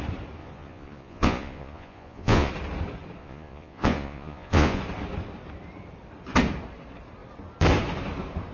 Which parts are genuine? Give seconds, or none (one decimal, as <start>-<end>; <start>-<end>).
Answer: 0.0-0.4; 2.5-3.2; 4.8-8.5